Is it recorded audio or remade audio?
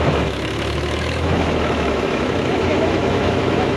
remade